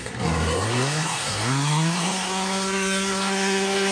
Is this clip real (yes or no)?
no